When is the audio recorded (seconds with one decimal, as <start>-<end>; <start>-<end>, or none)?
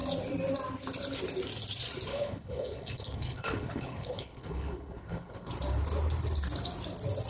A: 0.0-2.1; 5.5-7.3